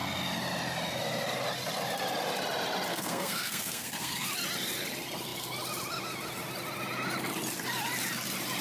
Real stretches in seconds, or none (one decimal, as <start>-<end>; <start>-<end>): 0.0-2.9; 4.3-8.6